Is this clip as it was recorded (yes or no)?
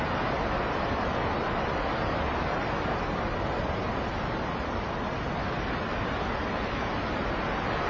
yes